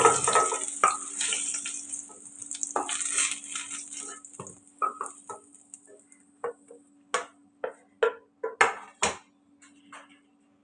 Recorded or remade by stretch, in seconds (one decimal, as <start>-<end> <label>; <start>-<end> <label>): 0.0-10.6 recorded